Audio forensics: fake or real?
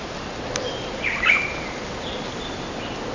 real